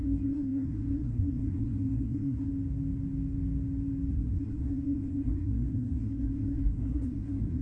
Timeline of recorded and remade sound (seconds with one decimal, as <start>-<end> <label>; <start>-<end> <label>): 0.0-2.5 remade; 2.5-4.1 recorded; 4.1-7.6 remade